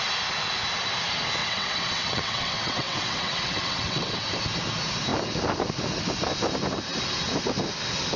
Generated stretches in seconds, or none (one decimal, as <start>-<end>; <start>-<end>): 1.4-4.4